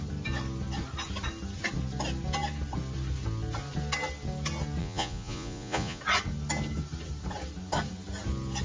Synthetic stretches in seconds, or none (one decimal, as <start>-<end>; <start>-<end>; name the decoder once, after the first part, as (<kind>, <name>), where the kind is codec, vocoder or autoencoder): 4.8-6.0 (vocoder, Vocos)